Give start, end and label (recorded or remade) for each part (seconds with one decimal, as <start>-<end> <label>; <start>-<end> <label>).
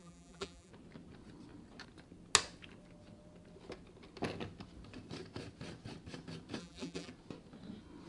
0.0-0.7 remade; 0.7-6.6 recorded; 6.6-7.1 remade; 7.1-8.1 recorded